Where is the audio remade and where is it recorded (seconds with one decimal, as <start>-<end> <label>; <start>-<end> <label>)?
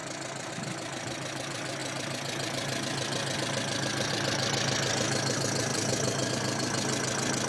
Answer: 0.0-7.5 recorded